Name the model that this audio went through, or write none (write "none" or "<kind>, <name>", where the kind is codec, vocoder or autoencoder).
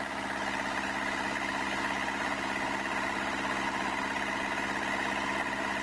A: none